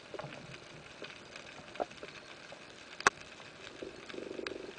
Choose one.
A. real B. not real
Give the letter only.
A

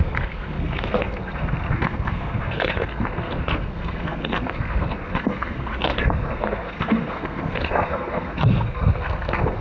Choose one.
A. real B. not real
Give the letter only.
B